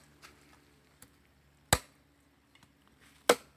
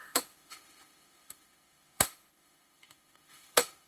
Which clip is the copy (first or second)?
second